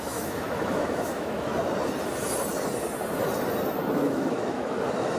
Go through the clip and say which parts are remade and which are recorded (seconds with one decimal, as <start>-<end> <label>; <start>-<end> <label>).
0.0-1.5 remade; 1.5-3.9 recorded; 3.9-5.2 remade

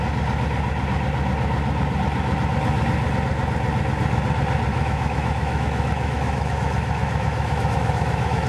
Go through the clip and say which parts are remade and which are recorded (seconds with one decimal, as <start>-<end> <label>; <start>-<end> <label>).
0.0-4.7 recorded; 4.7-8.5 remade

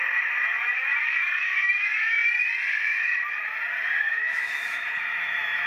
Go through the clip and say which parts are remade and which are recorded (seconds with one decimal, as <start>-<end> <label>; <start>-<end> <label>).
0.0-2.2 remade; 2.2-2.7 recorded; 2.7-3.1 remade; 3.1-4.0 recorded; 4.0-5.7 remade